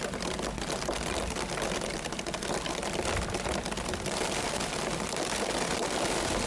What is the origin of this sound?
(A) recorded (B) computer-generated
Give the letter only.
A